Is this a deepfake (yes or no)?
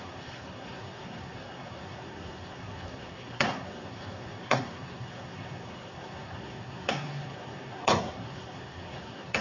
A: yes